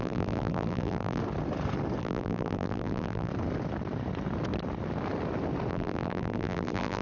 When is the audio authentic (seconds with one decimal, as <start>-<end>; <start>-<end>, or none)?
1.2-2.0; 3.3-5.7